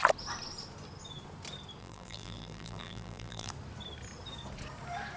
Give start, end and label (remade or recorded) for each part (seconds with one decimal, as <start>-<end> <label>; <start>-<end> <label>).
0.0-1.8 recorded; 1.8-3.5 remade; 3.5-5.2 recorded